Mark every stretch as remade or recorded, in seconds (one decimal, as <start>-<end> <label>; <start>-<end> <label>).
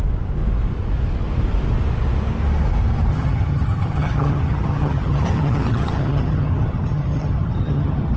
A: 0.0-3.1 recorded; 3.1-8.2 remade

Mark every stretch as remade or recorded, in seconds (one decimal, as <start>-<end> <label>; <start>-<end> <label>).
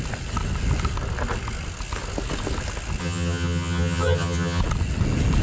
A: 0.0-3.0 recorded; 3.0-4.6 remade; 4.6-5.4 recorded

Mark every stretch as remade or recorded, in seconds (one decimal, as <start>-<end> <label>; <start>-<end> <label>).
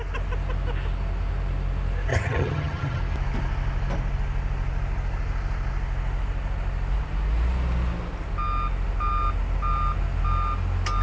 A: 0.0-2.1 recorded; 2.1-3.0 remade; 3.0-11.0 recorded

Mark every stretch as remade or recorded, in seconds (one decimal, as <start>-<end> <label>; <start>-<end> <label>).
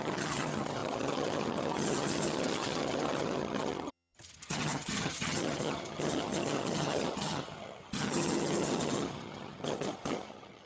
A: 0.0-10.7 remade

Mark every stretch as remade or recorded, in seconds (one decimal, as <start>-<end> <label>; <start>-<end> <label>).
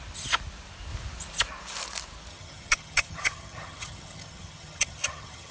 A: 0.0-2.3 recorded; 2.3-5.5 remade